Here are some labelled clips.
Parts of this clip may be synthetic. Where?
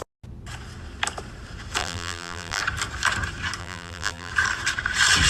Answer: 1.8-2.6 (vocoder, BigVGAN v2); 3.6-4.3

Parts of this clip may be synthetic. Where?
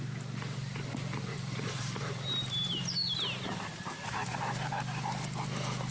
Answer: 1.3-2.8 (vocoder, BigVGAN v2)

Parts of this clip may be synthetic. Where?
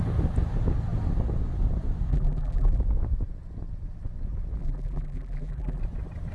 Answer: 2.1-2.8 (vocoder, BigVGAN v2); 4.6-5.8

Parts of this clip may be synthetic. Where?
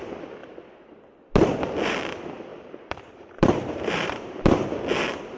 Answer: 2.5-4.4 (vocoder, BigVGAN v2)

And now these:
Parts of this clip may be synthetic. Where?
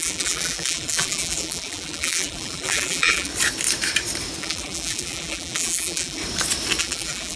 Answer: 0.0-3.3 (vocoder, BigVGAN v2); 4.4-6.2; 6.8-7.4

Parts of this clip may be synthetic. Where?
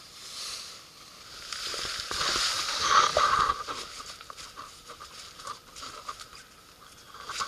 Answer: 3.1-6.8 (vocoder, BigVGAN v2)